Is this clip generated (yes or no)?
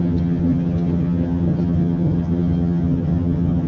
yes